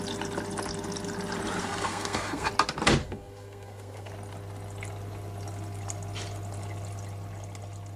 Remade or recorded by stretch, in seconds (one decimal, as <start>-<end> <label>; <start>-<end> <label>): 0.0-1.6 recorded; 1.6-2.5 remade; 2.5-3.0 recorded; 3.0-4.1 remade; 4.1-8.0 recorded